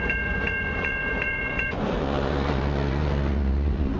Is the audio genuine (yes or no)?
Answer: no